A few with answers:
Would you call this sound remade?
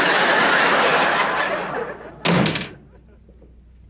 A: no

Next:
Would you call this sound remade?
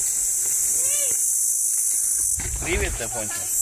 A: no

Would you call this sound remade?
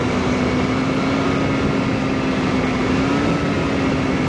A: no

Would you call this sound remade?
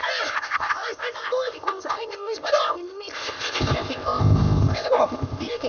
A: yes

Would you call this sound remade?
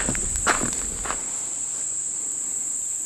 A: yes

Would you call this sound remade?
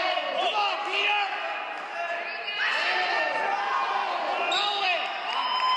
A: no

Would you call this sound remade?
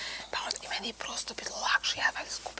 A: no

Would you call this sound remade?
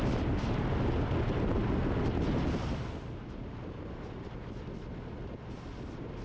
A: no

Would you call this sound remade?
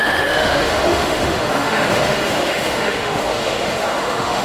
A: yes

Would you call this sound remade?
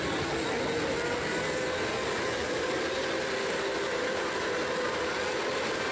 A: no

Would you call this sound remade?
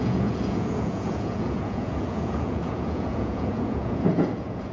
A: yes